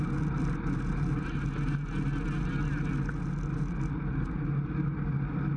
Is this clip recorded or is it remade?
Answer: recorded